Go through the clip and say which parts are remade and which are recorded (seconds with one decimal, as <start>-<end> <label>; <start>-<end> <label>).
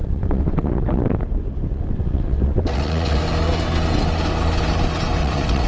0.0-1.2 remade; 1.2-1.7 recorded; 1.7-3.2 remade; 3.2-5.2 recorded; 5.2-5.7 remade